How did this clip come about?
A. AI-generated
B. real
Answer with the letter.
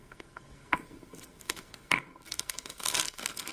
A